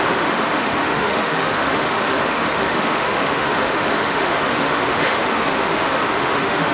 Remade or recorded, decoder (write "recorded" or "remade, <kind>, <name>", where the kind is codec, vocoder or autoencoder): remade, autoencoder, DAC-VAE